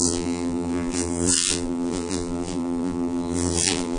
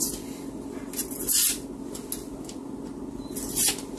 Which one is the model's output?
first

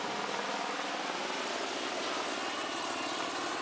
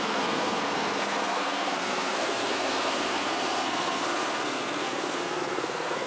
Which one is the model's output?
second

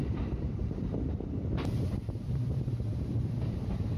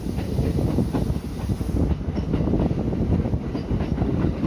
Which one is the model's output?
first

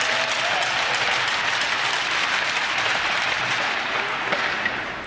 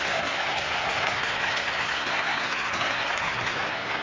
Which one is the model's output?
second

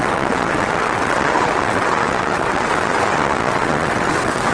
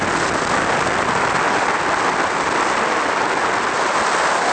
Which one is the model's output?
first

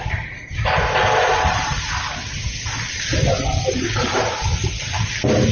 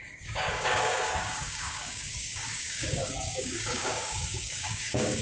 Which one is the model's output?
second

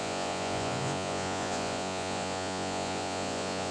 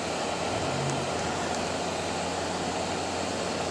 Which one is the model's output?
first